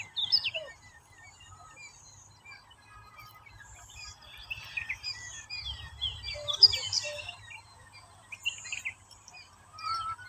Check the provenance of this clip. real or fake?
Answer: fake